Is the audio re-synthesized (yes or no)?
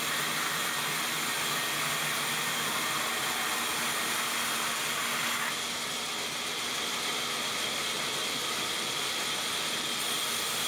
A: no